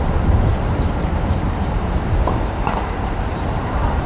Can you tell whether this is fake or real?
fake